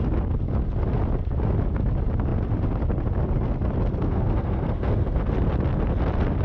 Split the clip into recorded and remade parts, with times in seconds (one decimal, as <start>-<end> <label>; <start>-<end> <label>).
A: 0.0-4.0 recorded; 4.0-5.2 remade; 5.2-6.4 recorded